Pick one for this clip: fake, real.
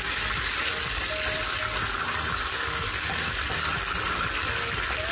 real